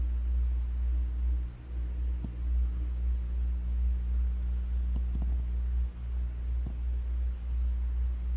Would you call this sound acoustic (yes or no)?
yes